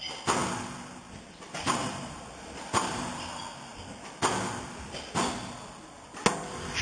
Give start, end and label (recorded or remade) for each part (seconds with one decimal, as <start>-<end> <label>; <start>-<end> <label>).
0.0-0.4 recorded; 0.4-3.0 remade; 3.0-6.8 recorded